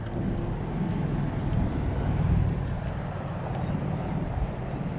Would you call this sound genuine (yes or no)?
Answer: yes